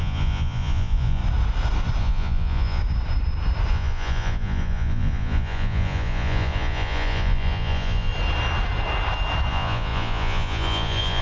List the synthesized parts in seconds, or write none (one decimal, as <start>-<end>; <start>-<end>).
0.0-1.2; 2.0-2.8; 3.7-8.1; 9.5-11.2